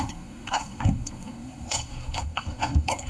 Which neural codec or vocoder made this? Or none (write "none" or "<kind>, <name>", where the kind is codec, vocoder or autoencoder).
codec, SNAC